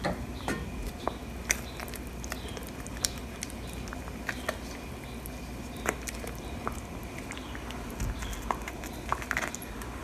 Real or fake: real